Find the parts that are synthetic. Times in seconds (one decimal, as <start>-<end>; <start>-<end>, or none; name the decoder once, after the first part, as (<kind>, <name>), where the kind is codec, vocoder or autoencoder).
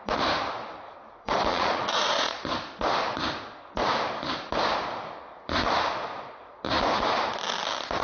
1.5-2.4 (vocoder, Vocos)